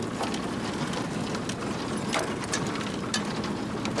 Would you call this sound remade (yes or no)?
no